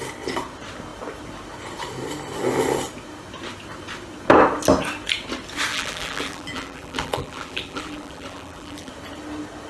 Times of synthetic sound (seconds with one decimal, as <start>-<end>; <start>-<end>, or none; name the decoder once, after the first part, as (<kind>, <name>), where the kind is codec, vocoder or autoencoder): 5.7-8.9 (vocoder, BigVGAN v2)